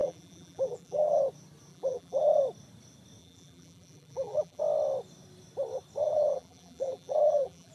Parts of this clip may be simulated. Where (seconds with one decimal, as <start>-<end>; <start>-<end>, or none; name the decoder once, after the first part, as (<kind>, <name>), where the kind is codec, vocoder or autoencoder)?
0.0-1.2 (vocoder, BigVGAN v2); 1.7-2.4; 3.2-4.6; 6.0-7.7